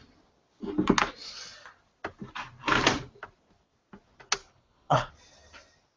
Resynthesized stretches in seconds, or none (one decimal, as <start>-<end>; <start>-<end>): 4.4-5.1